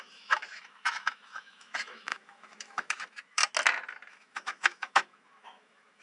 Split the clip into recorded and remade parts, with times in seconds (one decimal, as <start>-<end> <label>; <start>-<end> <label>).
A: 0.0-3.4 remade; 3.4-4.1 recorded; 4.1-6.0 remade